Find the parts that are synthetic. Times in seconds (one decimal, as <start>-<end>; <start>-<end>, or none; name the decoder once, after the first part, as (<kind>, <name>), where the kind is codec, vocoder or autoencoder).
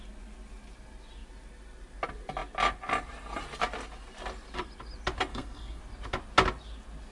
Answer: 5.3-5.8 (codec, SNAC)